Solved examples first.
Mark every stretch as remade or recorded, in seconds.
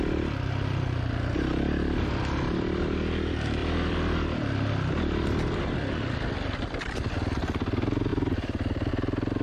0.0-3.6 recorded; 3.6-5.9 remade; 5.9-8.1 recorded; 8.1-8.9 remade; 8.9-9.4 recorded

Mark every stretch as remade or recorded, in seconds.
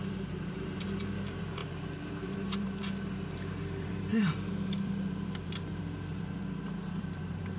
0.0-7.6 remade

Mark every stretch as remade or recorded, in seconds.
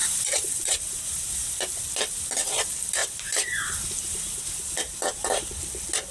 0.0-1.5 remade; 1.5-3.0 recorded; 3.0-5.5 remade; 5.5-6.1 recorded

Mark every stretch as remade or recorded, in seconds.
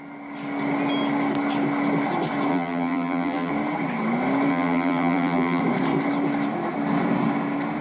0.0-2.5 recorded; 2.5-3.5 remade; 3.5-4.5 recorded; 4.5-5.6 remade; 5.6-7.8 recorded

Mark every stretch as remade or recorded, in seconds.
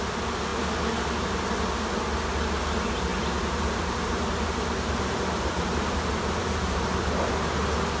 0.0-0.5 recorded; 0.5-1.6 remade; 1.6-3.1 recorded; 3.1-7.3 remade; 7.3-8.0 recorded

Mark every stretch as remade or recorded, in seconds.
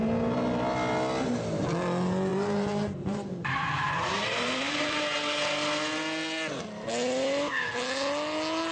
0.0-2.3 recorded; 2.3-5.0 remade; 5.0-8.7 recorded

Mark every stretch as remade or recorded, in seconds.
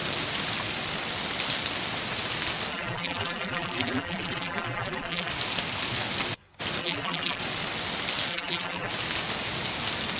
0.0-2.7 recorded; 2.7-5.3 remade; 5.3-6.8 recorded; 6.8-7.4 remade; 7.4-8.3 recorded; 8.3-8.9 remade; 8.9-10.2 recorded